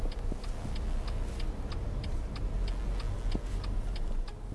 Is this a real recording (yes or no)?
yes